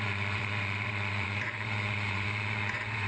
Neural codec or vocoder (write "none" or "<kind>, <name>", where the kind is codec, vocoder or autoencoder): vocoder, Vocos